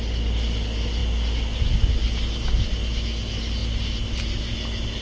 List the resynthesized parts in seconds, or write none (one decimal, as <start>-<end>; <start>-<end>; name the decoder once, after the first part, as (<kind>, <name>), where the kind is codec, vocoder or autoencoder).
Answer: none